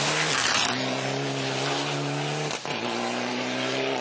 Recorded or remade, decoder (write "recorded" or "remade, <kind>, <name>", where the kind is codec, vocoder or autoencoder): recorded